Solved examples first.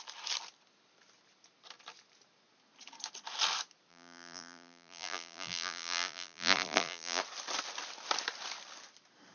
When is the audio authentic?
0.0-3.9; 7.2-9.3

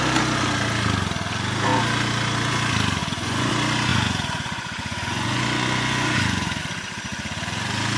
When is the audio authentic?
0.0-3.0; 3.5-3.9; 6.6-8.0

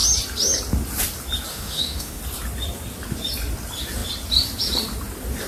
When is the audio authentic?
0.0-1.5; 2.2-5.5